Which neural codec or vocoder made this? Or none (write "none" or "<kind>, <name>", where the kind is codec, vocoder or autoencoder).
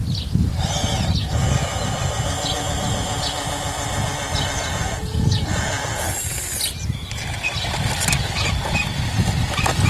none